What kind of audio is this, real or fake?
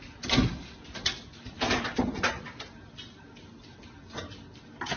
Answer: real